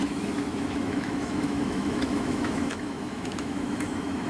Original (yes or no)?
no